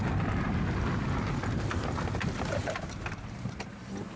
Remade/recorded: recorded